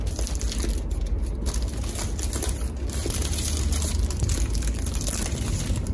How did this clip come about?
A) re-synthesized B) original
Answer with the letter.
B